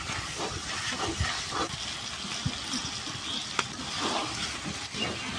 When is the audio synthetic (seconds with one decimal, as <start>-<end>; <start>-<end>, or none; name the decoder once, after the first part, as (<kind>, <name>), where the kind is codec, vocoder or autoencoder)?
none